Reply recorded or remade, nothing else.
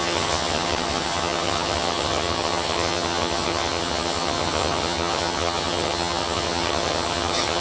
remade